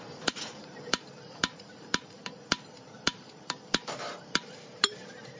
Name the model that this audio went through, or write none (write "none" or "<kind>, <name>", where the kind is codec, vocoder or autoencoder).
vocoder, BigVGAN v2